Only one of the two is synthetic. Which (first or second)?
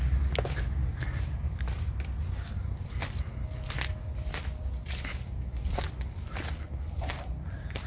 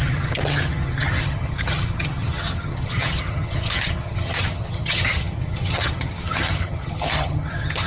second